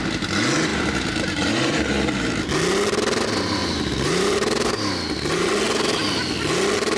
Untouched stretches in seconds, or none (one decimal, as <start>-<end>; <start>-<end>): 0.0-0.7; 2.5-3.6; 5.5-7.0